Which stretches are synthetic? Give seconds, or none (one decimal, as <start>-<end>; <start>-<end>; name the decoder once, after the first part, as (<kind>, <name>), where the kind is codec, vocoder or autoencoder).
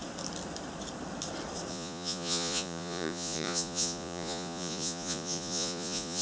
1.7-6.2 (vocoder, Vocos)